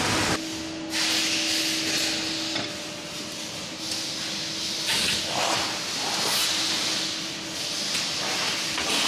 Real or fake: real